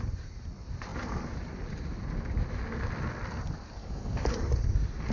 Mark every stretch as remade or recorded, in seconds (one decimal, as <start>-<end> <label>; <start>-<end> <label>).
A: 0.0-3.8 recorded; 3.8-4.6 remade; 4.6-5.1 recorded

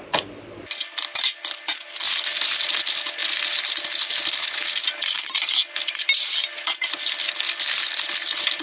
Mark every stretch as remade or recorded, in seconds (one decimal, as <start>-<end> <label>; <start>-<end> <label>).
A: 0.0-8.6 recorded

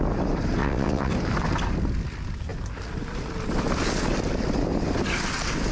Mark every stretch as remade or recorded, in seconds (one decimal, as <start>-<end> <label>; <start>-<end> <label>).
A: 0.0-0.6 recorded; 0.6-1.1 remade; 1.1-5.7 recorded

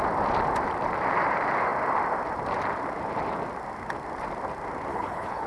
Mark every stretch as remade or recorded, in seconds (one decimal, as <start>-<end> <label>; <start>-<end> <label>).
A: 0.0-4.9 recorded; 4.9-5.5 remade

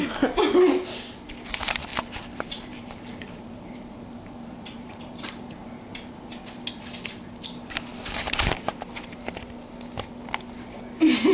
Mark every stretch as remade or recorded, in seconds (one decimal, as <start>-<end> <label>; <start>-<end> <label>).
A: 0.0-1.9 recorded; 1.9-6.1 remade; 6.1-11.3 recorded

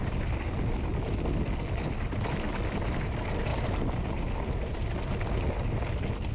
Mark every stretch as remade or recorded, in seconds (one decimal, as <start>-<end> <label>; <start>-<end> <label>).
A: 0.0-6.3 recorded

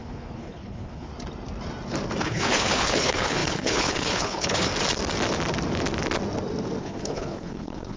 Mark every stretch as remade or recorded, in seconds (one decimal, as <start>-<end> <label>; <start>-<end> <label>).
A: 0.0-1.1 remade; 1.1-2.2 recorded; 2.2-4.7 remade; 4.7-6.8 recorded; 6.8-8.0 remade

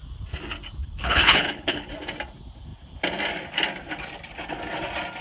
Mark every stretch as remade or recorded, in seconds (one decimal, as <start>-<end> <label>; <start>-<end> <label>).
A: 0.0-0.8 recorded; 0.8-1.9 remade; 1.9-5.2 recorded